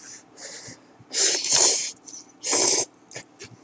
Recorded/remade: recorded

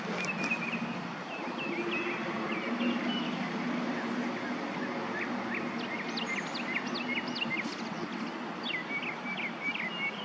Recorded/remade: recorded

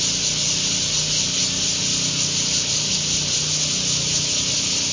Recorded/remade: recorded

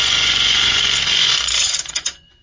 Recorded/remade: remade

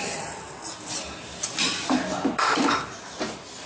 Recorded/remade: recorded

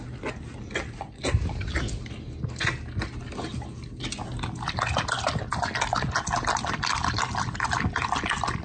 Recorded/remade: recorded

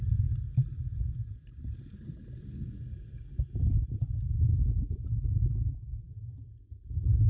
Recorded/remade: recorded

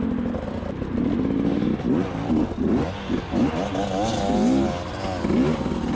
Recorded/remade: recorded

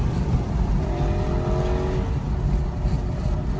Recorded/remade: recorded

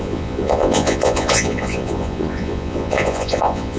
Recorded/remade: remade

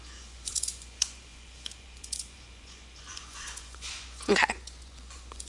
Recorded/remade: remade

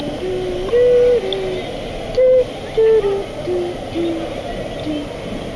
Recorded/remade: recorded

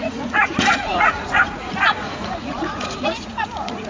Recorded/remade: remade